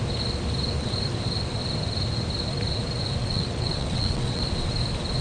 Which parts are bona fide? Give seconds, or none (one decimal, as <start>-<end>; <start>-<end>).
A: 0.0-3.2; 4.4-5.2